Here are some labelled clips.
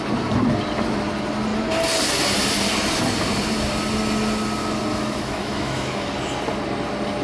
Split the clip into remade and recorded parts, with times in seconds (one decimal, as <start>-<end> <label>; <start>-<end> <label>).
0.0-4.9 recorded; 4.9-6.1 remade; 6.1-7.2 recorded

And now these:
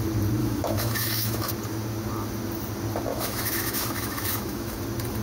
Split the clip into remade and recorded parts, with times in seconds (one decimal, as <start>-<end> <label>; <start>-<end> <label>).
0.0-0.4 recorded; 0.4-1.5 remade; 1.5-3.1 recorded; 3.1-4.8 remade; 4.8-5.2 recorded

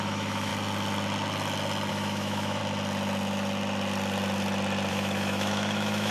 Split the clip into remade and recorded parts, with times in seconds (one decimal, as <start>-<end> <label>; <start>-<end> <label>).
0.0-0.5 remade; 0.5-1.9 recorded; 1.9-2.6 remade; 2.6-4.9 recorded; 4.9-6.1 remade

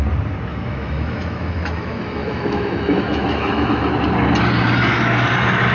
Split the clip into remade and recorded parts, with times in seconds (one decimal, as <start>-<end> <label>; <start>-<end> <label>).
0.0-0.5 recorded; 0.5-3.9 remade; 3.9-5.7 recorded

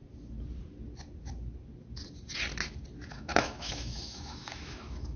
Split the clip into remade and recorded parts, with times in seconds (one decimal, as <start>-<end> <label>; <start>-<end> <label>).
0.0-3.1 recorded; 3.1-5.2 remade

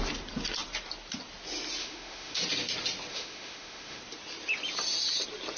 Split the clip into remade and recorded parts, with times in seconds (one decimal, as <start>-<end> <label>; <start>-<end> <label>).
0.0-1.8 recorded; 1.8-2.4 remade; 2.4-3.1 recorded; 3.1-4.0 remade; 4.0-5.6 recorded

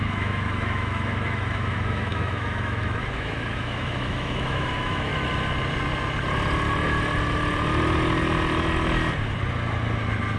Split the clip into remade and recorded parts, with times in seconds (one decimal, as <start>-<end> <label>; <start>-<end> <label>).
0.0-5.1 remade; 5.1-10.4 recorded